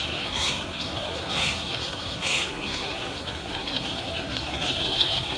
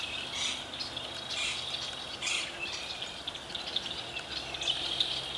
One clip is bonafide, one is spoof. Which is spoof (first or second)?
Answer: first